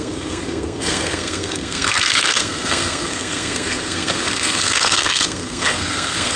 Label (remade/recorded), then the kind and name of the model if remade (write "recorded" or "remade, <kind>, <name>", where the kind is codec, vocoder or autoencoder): remade, codec, SNAC